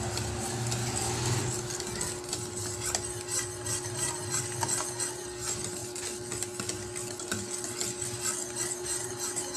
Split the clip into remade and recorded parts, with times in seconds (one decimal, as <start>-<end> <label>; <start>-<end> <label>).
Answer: 0.0-9.6 recorded